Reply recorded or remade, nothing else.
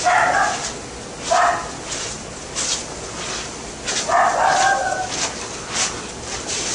recorded